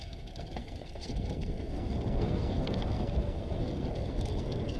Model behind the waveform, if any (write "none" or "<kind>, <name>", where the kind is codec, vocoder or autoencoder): codec, SNAC